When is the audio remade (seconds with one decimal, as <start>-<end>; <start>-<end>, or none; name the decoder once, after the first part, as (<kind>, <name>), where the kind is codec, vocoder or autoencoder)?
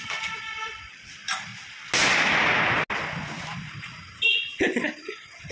0.0-1.5 (vocoder, BigVGAN v2); 4.8-5.5